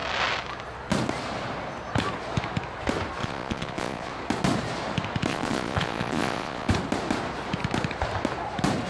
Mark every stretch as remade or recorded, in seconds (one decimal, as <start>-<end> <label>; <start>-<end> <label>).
0.0-3.2 recorded; 3.2-4.1 remade; 4.1-5.3 recorded; 5.3-6.7 remade; 6.7-8.9 recorded

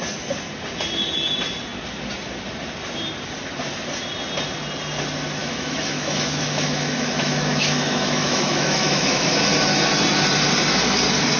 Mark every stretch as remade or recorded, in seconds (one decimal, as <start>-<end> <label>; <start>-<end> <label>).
0.0-5.4 recorded; 5.4-9.4 remade; 9.4-11.4 recorded

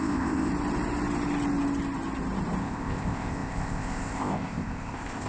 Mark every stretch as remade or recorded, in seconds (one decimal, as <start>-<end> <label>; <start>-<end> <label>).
0.0-0.5 remade; 0.5-2.6 recorded; 2.6-5.3 remade

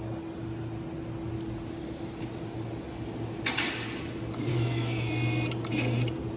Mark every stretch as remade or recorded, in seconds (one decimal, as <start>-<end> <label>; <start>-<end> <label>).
0.0-4.5 recorded; 4.5-5.1 remade; 5.1-6.4 recorded

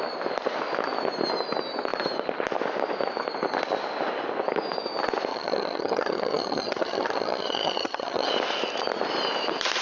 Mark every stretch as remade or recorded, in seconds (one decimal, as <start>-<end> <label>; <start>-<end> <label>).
0.0-5.3 recorded; 5.3-8.3 remade; 8.3-9.8 recorded